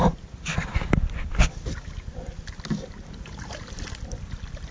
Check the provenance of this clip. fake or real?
real